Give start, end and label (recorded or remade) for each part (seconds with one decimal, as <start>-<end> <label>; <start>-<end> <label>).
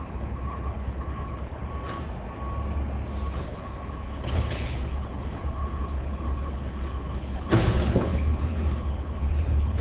0.0-1.6 remade; 1.6-3.4 recorded; 3.4-9.8 remade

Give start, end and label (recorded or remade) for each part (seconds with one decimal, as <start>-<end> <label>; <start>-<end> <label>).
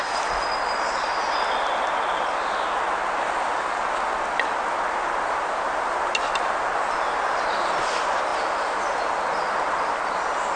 0.0-10.6 recorded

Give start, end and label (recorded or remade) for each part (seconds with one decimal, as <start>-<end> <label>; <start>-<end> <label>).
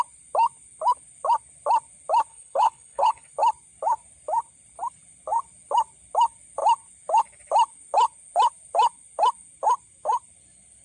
0.0-2.3 recorded; 2.3-3.3 remade; 3.3-10.8 recorded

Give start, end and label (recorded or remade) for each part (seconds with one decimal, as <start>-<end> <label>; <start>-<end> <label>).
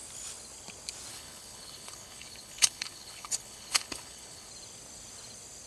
0.0-1.1 recorded; 1.1-4.5 remade; 4.5-5.7 recorded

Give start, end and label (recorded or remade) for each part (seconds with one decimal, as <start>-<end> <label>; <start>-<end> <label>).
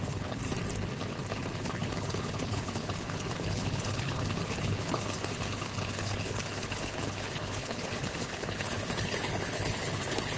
0.0-0.4 remade; 0.4-1.5 recorded; 1.5-10.4 remade